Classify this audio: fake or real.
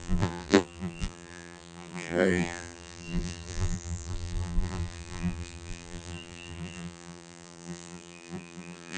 fake